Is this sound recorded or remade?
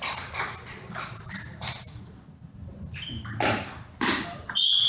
recorded